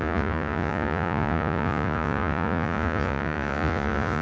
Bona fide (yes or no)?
no